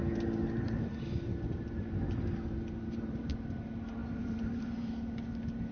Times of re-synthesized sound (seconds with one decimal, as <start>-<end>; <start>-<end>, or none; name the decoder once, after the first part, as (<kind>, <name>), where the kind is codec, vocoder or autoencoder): 0.0-3.3 (vocoder, BigVGAN v2); 4.0-4.9